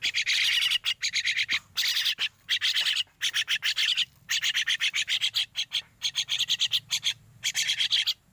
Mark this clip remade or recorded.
recorded